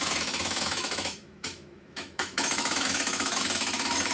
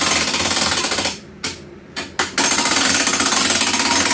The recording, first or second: second